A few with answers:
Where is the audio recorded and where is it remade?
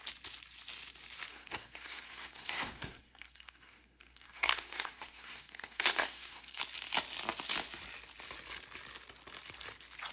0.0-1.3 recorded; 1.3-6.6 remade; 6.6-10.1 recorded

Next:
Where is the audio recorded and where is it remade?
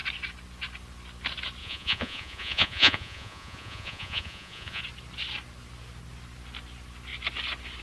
0.0-1.6 recorded; 1.6-4.8 remade; 4.8-7.8 recorded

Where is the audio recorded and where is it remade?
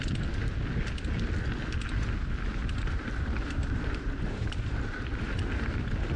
0.0-2.6 recorded; 2.6-5.4 remade; 5.4-6.2 recorded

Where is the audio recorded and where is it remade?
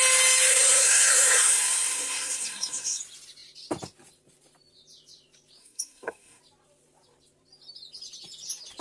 0.0-0.5 recorded; 0.5-3.0 remade; 3.0-5.6 recorded; 5.6-6.4 remade; 6.4-8.8 recorded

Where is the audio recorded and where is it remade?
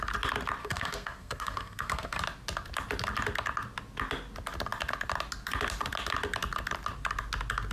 0.0-0.6 recorded; 0.6-2.2 remade; 2.2-7.7 recorded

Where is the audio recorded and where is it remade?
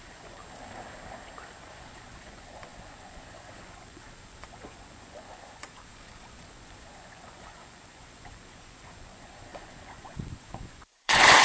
0.0-0.4 remade; 0.4-1.6 recorded; 1.6-11.4 remade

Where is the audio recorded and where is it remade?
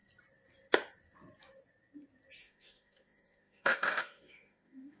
0.0-2.4 recorded; 2.4-5.0 remade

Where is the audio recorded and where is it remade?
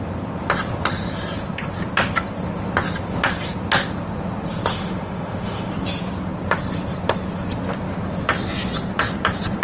0.0-4.7 recorded; 4.7-5.7 remade; 5.7-9.6 recorded